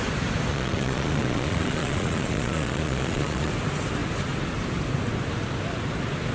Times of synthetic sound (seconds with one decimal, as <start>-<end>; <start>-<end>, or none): 0.5-3.5

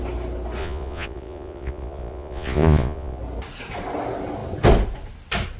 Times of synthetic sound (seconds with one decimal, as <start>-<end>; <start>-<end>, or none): 0.6-3.2

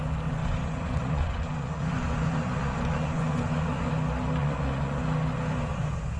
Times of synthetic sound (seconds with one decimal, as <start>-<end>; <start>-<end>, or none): 0.4-3.9; 4.4-5.0

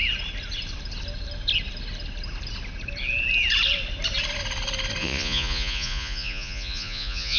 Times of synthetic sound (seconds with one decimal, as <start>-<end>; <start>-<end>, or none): 5.0-7.4

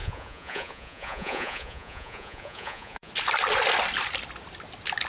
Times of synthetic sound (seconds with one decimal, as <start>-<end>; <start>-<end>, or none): 0.0-3.1

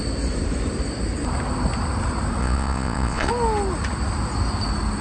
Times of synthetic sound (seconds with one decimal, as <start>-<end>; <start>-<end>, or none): 2.4-3.3

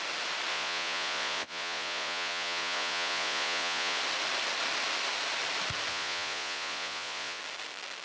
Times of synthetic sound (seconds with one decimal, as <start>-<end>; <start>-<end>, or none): 0.5-4.0; 5.9-7.4